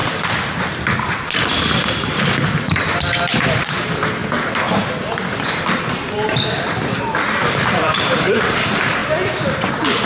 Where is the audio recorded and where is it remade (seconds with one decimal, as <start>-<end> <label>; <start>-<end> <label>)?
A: 0.0-3.6 recorded; 3.6-4.2 remade; 4.2-7.6 recorded; 7.6-9.0 remade; 9.0-9.7 recorded; 9.7-10.1 remade